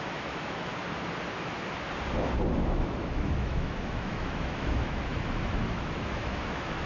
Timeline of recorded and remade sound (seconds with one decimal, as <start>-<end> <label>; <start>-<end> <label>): 0.0-0.7 remade; 0.7-2.5 recorded; 2.5-6.9 remade